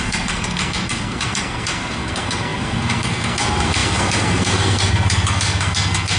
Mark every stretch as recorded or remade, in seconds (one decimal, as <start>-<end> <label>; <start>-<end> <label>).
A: 0.0-6.2 remade

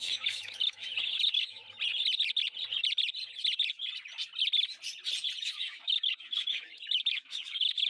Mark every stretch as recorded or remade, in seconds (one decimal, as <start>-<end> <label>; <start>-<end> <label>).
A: 0.0-1.6 remade; 1.6-5.4 recorded; 5.4-7.9 remade

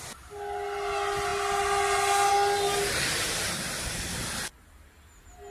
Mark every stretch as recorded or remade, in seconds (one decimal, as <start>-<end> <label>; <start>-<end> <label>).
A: 0.0-5.5 recorded